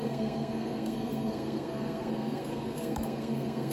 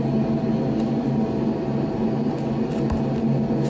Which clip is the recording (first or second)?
second